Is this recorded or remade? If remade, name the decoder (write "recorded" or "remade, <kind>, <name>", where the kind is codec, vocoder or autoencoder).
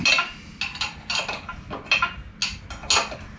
recorded